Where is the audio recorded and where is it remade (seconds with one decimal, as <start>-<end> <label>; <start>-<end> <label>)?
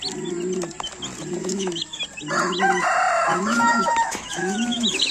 0.0-1.4 recorded; 1.4-2.0 remade; 2.0-3.3 recorded; 3.3-5.1 remade